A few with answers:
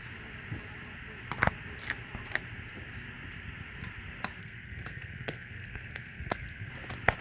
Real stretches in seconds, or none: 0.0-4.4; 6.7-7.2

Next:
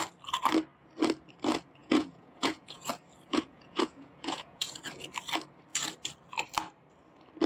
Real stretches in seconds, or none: 0.0-1.8; 2.9-3.3; 4.8-7.5